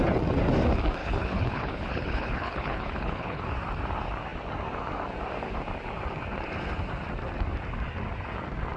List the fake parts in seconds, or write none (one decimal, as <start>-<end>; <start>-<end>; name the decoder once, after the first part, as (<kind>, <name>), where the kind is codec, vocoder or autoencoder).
1.0-3.4 (codec, HILCodec)